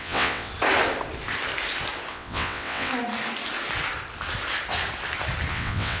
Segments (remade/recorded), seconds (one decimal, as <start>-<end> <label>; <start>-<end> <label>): 0.0-0.5 remade; 0.5-2.1 recorded; 2.1-2.9 remade; 2.9-5.5 recorded; 5.5-6.0 remade